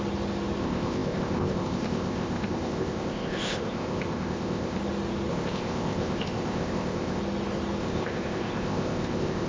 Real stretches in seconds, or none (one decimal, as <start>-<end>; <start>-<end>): 0.0-0.6; 4.8-5.3; 7.2-7.8